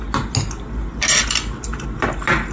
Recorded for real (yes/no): yes